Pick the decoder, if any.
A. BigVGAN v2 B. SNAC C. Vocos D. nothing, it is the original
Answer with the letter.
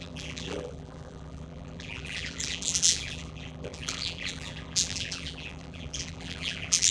A